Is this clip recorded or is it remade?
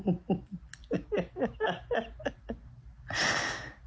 recorded